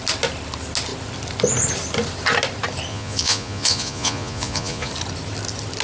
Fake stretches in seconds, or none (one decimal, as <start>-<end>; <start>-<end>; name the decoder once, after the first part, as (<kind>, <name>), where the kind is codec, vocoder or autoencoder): 2.9-4.9 (vocoder, Vocos)